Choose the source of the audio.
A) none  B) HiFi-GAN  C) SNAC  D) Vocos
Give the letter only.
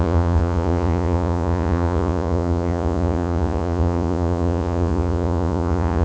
D